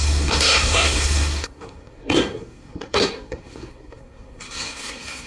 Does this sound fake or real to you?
fake